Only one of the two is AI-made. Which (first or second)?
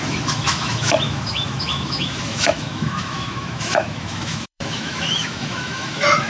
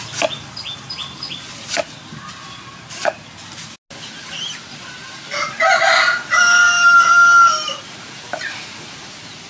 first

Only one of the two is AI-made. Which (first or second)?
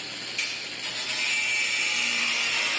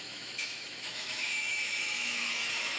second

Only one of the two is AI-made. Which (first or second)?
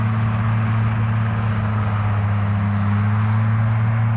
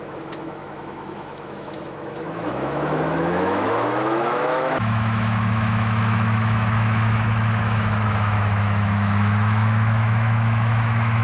second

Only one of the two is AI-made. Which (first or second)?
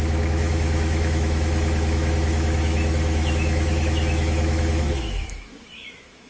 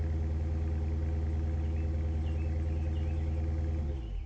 first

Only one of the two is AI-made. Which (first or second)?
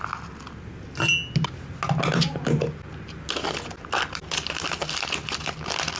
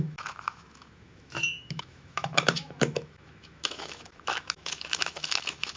second